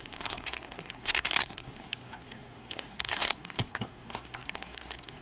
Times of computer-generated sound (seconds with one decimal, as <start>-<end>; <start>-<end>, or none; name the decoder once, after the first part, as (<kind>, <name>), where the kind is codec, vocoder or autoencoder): 0.0-5.2 (codec, SNAC)